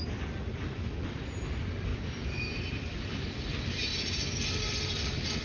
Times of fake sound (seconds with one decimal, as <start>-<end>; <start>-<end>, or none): none